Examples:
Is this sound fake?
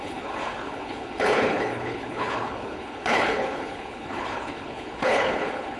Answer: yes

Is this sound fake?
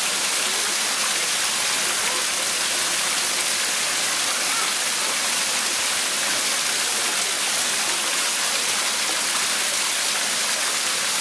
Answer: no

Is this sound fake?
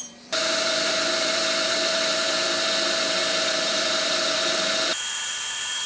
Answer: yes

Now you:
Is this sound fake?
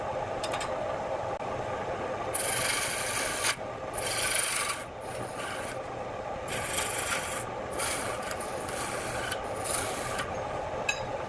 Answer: no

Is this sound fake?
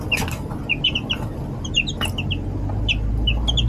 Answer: no